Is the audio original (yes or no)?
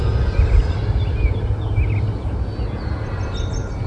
yes